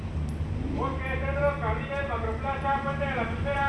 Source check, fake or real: real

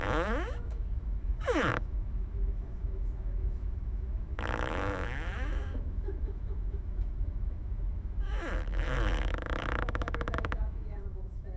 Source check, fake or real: fake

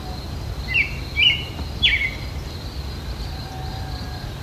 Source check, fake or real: real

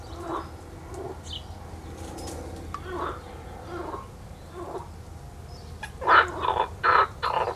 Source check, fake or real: real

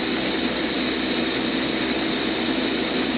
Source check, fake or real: real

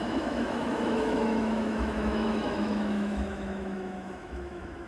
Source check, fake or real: fake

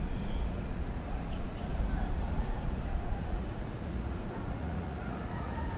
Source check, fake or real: fake